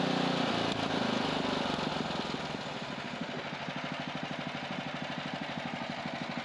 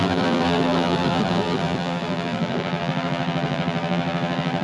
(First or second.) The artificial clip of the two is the second